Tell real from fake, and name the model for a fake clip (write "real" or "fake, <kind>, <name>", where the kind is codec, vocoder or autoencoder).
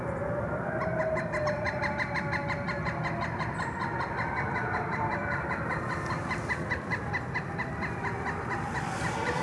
fake, vocoder, BigVGAN v2